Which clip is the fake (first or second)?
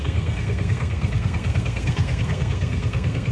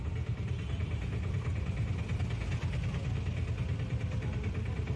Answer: first